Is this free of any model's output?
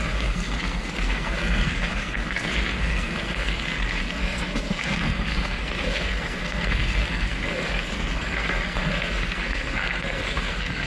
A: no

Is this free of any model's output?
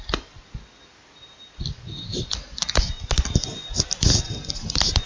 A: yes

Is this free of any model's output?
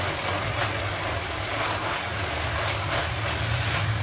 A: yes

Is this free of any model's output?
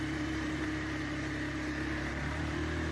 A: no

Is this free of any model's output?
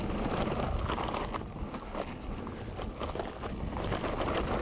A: yes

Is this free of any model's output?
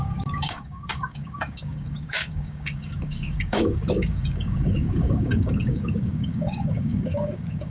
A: no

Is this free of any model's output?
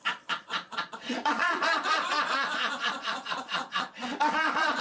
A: no